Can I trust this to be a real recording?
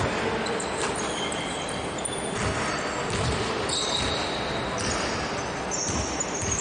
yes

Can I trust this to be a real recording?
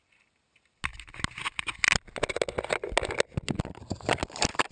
yes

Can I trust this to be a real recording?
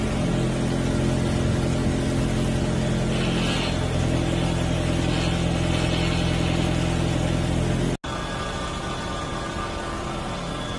yes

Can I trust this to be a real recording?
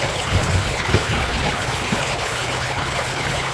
no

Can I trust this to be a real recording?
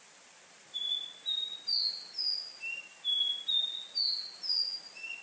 yes